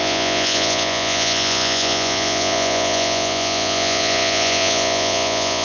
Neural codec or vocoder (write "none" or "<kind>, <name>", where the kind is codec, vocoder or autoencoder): vocoder, Vocos